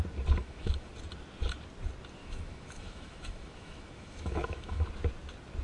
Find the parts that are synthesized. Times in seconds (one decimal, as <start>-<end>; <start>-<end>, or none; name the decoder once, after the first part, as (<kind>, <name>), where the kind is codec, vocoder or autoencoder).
0.4-0.9 (autoencoder, DAC-VAE); 2.2-4.9